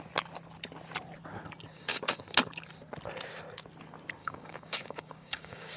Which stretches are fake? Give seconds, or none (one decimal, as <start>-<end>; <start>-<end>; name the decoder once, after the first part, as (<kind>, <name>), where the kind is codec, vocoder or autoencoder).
1.7-2.2 (codec, DAC); 4.2-5.8